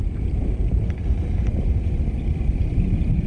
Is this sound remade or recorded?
recorded